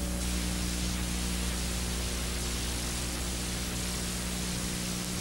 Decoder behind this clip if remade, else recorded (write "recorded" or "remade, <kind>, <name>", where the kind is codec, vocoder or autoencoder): recorded